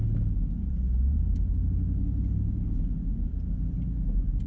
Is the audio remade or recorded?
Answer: recorded